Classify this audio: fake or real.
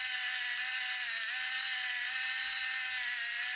real